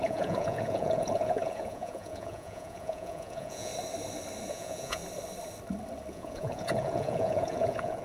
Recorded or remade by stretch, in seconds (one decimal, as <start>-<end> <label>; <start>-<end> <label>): 0.0-3.7 remade; 3.7-4.5 recorded; 4.5-5.0 remade; 5.0-6.1 recorded; 6.1-8.0 remade